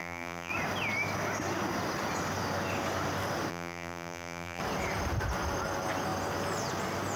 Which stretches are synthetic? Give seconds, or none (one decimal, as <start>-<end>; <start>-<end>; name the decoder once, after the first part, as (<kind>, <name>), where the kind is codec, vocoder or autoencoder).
0.0-0.5 (vocoder, BigVGAN v2); 3.5-4.6